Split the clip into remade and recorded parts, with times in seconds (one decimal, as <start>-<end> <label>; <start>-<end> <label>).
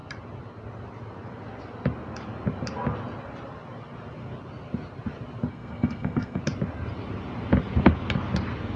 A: 0.0-5.5 recorded; 5.5-6.4 remade; 6.4-8.8 recorded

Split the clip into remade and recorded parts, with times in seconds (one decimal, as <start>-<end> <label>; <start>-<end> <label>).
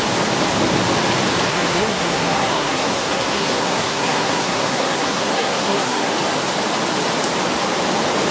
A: 0.0-1.5 recorded; 1.5-6.1 remade; 6.1-8.3 recorded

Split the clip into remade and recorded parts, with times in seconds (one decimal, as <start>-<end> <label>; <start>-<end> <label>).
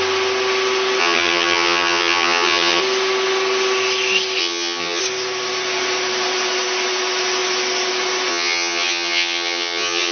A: 0.0-1.0 recorded; 1.0-2.8 remade; 2.8-4.4 recorded; 4.4-5.0 remade; 5.0-8.3 recorded; 8.3-10.1 remade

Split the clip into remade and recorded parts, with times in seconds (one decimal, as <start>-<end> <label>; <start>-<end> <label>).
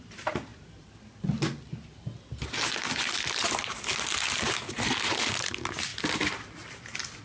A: 0.0-7.2 recorded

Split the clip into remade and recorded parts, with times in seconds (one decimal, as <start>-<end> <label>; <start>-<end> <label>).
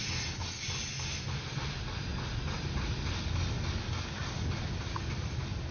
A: 0.0-5.7 recorded